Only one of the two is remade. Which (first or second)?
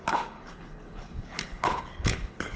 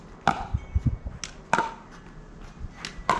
first